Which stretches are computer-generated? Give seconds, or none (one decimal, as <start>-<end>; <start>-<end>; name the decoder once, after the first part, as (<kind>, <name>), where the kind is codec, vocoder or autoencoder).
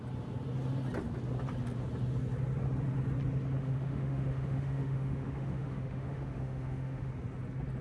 3.6-7.1 (autoencoder, DAC-VAE)